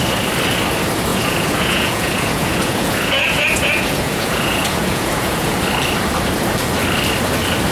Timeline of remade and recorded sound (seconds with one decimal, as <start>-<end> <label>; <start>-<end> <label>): 0.0-1.1 recorded; 1.1-5.5 remade; 5.5-7.7 recorded